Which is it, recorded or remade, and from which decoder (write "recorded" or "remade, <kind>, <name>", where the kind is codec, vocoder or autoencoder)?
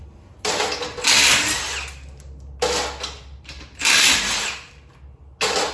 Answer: recorded